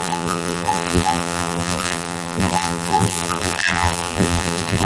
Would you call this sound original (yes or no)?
no